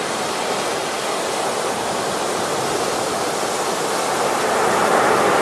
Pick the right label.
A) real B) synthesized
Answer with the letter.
A